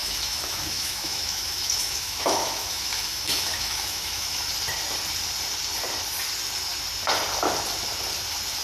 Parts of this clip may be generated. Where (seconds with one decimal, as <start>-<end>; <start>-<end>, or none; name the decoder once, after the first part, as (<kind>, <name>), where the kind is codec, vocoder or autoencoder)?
0.0-4.5 (autoencoder, DAC-VAE)